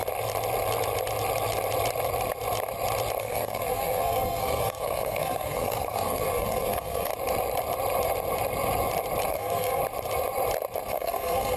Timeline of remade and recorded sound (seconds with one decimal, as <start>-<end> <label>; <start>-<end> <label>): 0.0-3.2 recorded; 3.2-7.1 remade; 7.1-9.3 recorded; 9.3-9.8 remade; 9.8-10.9 recorded; 10.9-11.6 remade